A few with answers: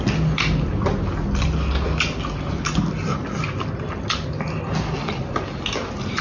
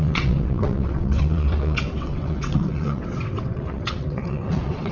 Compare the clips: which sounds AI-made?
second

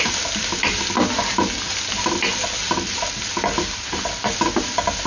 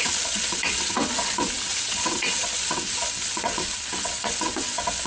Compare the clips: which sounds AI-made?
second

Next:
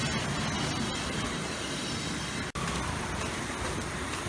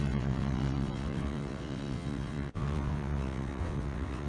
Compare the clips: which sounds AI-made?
second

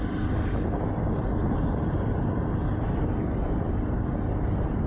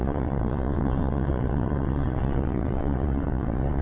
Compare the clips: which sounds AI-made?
second